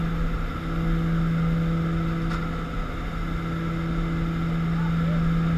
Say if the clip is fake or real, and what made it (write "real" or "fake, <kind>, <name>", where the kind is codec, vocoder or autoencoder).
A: real